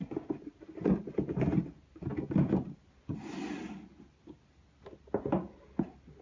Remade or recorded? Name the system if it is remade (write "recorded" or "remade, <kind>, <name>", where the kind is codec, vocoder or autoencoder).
recorded